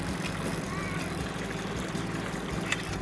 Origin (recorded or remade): recorded